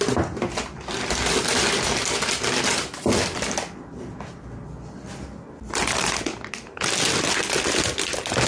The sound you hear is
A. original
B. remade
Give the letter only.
A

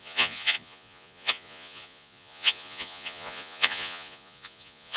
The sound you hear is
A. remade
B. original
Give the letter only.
A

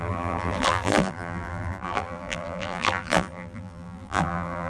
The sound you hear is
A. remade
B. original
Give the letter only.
A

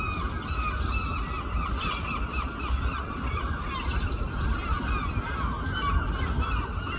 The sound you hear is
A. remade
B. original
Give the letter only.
B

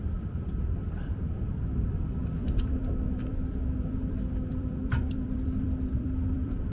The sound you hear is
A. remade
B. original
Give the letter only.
A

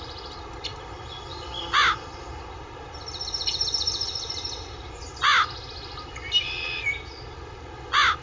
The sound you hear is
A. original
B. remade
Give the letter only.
A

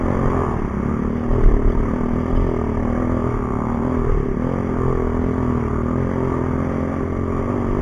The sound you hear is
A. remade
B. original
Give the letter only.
B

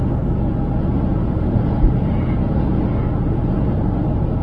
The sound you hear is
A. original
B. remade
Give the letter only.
A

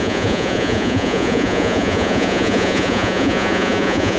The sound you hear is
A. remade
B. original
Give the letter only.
A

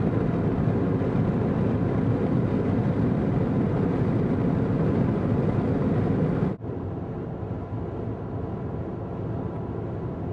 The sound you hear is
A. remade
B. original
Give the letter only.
B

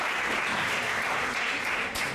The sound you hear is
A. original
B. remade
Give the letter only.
B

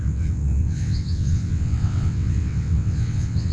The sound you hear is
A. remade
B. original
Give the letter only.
A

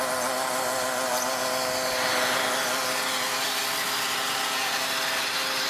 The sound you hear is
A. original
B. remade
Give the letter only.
A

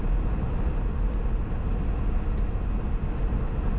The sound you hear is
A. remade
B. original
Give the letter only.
B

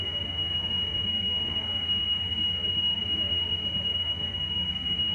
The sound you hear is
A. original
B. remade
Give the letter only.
B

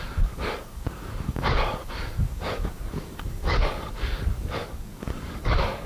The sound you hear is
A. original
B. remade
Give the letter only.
B